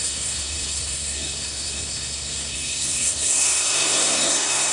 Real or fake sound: fake